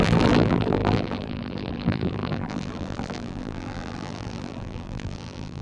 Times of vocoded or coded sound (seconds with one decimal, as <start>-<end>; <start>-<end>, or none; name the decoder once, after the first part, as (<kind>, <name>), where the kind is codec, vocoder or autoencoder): 0.0-5.6 (vocoder, BigVGAN v2)